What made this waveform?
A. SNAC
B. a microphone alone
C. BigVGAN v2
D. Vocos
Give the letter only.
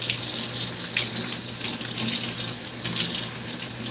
B